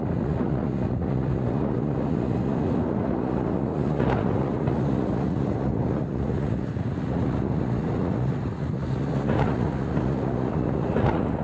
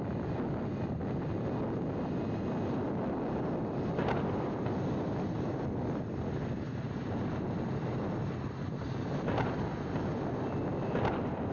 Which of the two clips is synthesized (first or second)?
first